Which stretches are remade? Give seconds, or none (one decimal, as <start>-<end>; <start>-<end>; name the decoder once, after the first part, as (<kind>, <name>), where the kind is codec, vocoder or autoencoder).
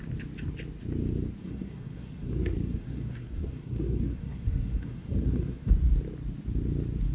1.4-5.7 (codec, SNAC)